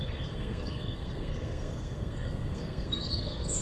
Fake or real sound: fake